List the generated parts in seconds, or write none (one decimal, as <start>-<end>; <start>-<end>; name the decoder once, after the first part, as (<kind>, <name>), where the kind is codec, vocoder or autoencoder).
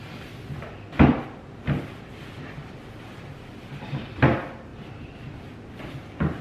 4.7-5.4 (vocoder, BigVGAN v2)